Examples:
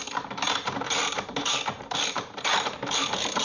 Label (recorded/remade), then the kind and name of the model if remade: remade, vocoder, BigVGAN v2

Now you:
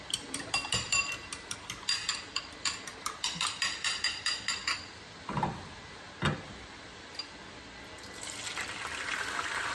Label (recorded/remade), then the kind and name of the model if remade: remade, vocoder, BigVGAN v2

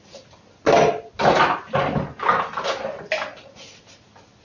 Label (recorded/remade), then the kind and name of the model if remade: recorded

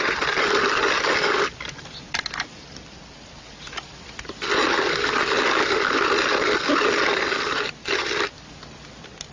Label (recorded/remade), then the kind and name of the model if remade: recorded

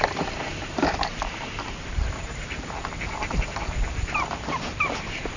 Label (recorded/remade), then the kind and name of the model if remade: remade, vocoder, BigVGAN v2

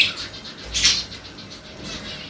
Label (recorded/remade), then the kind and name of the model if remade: remade, vocoder, BigVGAN v2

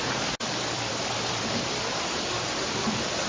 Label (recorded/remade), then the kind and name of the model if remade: remade, vocoder, BigVGAN v2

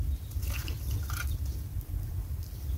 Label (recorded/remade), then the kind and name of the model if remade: remade, vocoder, BigVGAN v2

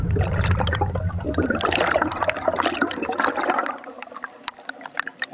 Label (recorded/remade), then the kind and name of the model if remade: remade, vocoder, BigVGAN v2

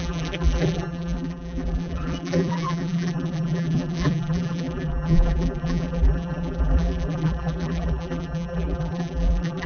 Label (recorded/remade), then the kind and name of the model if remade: remade, vocoder, BigVGAN v2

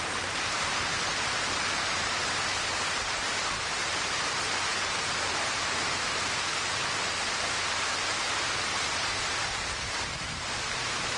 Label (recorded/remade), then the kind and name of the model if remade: remade, vocoder, BigVGAN v2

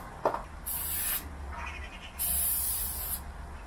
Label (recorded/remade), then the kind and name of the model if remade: recorded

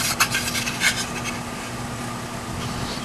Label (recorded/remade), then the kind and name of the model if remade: recorded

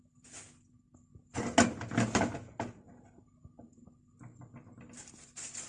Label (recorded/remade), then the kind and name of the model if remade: recorded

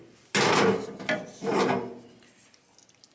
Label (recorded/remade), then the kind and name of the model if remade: recorded